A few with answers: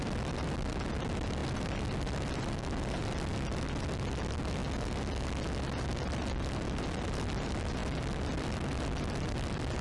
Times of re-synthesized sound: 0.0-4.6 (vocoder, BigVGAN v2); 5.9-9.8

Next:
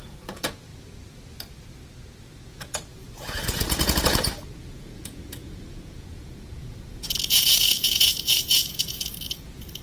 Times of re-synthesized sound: 0.0-0.7 (vocoder, Vocos); 2.5-9.8